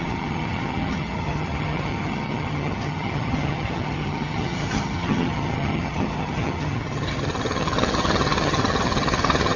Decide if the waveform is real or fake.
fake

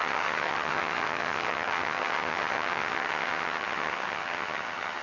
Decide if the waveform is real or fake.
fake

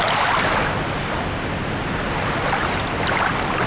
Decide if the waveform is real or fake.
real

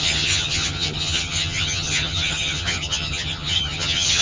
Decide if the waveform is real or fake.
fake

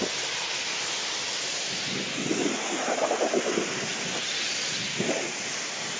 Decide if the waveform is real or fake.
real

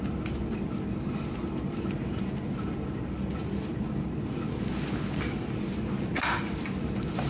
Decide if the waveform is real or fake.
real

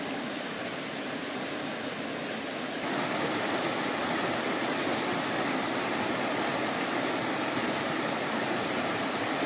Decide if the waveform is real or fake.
real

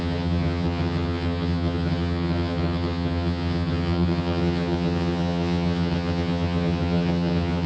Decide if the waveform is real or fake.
fake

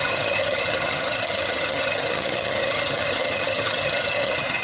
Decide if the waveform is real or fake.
fake